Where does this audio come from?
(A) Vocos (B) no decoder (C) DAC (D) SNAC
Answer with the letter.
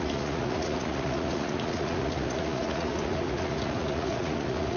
A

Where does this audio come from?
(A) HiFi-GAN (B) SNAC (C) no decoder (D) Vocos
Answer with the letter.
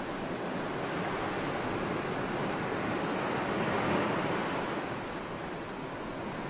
C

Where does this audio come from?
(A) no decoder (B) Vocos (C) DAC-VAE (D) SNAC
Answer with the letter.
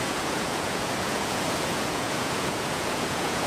B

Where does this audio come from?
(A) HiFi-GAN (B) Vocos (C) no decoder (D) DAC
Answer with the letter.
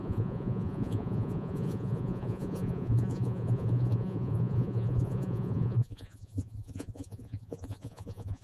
B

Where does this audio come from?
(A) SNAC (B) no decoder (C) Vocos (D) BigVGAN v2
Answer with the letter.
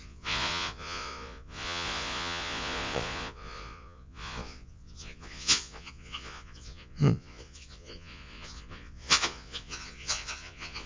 C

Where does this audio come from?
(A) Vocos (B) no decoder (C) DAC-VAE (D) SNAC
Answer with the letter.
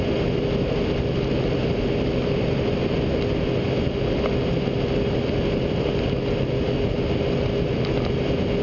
B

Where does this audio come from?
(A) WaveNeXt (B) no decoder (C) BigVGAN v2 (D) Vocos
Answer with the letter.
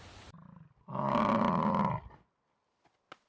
B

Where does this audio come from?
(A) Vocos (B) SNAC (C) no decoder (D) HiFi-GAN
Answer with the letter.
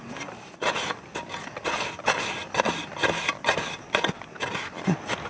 C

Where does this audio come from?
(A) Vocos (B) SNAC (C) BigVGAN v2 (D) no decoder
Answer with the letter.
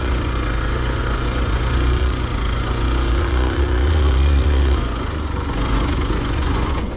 A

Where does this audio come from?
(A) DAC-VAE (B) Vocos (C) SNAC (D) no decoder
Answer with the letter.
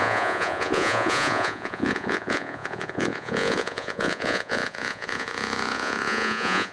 B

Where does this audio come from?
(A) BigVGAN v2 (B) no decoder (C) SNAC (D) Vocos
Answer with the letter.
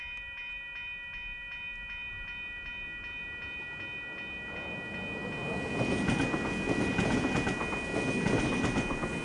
B